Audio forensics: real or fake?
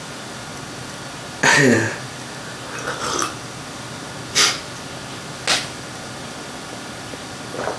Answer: real